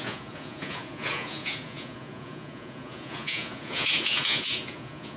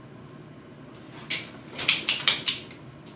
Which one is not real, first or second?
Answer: first